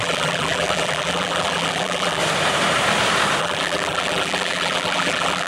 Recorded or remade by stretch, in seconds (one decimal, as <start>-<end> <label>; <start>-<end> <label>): 0.0-2.2 remade; 2.2-3.4 recorded; 3.4-5.5 remade